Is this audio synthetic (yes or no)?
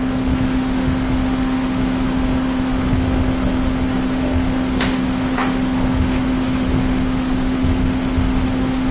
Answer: yes